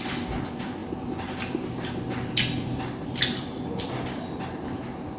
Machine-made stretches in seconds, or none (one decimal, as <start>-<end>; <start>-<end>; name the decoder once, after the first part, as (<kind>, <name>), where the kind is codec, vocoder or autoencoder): none